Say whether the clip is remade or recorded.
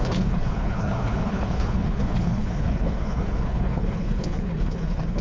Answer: remade